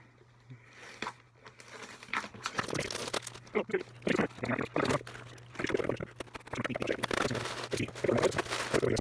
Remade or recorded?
recorded